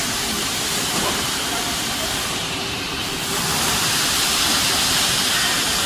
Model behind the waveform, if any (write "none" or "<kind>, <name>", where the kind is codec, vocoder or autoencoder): vocoder, BigVGAN v2